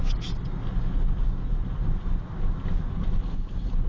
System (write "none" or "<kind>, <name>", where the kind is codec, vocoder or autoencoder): none